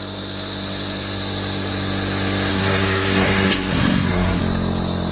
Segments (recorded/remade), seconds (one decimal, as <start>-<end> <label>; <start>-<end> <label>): 0.0-2.5 recorded; 2.5-4.4 remade; 4.4-5.1 recorded